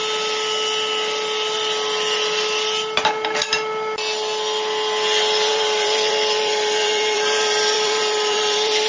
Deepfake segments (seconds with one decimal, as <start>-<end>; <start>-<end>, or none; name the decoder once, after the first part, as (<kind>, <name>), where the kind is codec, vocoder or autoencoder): 5.5-8.9 (vocoder, BigVGAN v2)